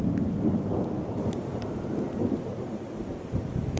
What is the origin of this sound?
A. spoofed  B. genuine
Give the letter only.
A